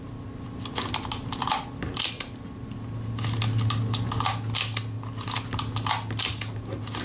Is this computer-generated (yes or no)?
no